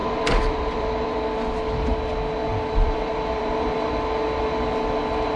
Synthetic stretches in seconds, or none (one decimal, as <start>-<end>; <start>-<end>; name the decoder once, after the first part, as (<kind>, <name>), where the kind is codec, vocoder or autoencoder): 0.0-1.2 (vocoder, BigVGAN v2); 2.5-3.9